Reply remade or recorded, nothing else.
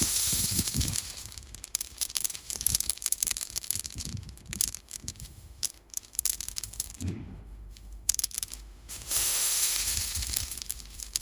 remade